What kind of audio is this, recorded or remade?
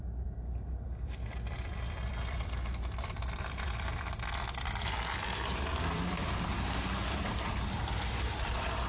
remade